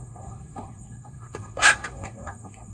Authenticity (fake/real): fake